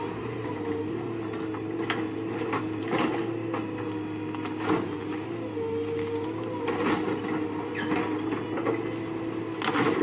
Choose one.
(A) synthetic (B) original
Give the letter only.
B